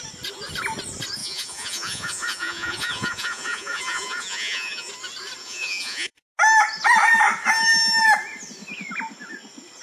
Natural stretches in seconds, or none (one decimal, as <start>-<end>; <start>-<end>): 0.0-1.2; 4.9-5.4; 6.2-9.8